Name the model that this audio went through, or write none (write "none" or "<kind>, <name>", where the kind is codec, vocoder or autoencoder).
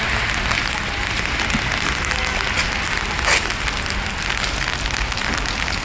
none